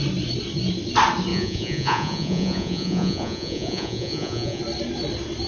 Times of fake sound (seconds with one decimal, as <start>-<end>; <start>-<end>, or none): 1.3-4.6

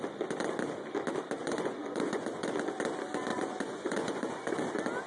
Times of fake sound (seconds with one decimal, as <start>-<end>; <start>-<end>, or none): 1.4-2.8; 3.3-4.6